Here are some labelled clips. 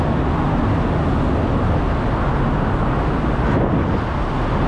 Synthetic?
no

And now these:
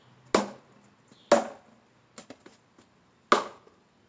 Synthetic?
no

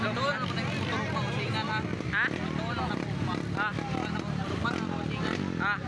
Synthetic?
no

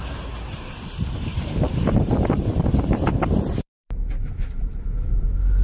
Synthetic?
yes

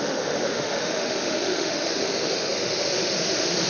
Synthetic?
yes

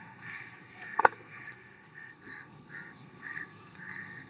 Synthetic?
yes